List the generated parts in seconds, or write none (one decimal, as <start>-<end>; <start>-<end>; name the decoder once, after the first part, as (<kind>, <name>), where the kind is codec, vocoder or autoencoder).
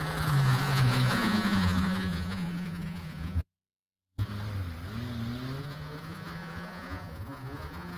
0.0-4.3 (vocoder, Vocos); 5.6-8.0